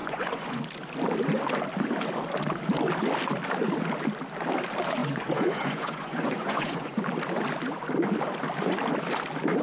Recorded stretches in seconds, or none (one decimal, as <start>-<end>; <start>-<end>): 0.7-5.0; 7.0-9.6